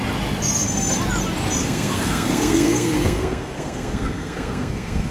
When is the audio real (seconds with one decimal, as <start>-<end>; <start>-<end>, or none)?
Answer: 0.0-1.6